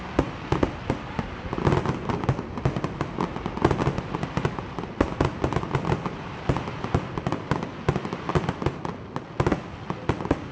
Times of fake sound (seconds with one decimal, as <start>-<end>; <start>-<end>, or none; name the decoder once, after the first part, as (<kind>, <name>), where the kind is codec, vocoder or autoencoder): none